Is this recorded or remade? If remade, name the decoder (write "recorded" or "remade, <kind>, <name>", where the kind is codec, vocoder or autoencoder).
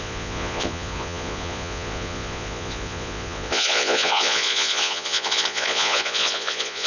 remade, vocoder, Vocos